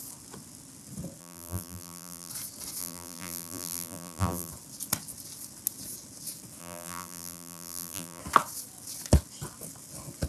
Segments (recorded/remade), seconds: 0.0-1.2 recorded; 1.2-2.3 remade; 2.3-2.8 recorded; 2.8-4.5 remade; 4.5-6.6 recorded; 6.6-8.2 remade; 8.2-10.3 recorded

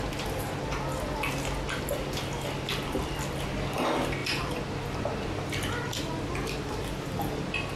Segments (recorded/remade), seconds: 0.0-7.8 recorded

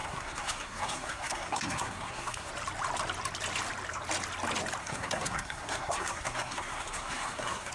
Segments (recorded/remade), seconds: 0.0-2.5 remade; 2.5-4.8 recorded; 4.8-7.7 remade

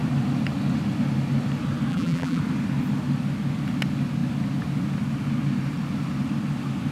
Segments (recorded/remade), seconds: 0.0-1.9 recorded; 1.9-2.4 remade; 2.4-6.9 recorded